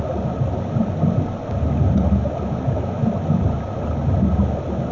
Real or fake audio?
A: real